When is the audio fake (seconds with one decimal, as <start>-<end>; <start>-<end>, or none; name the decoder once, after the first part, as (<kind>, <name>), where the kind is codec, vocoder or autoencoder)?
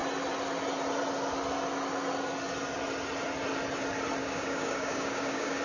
4.2-5.6 (codec, DAC)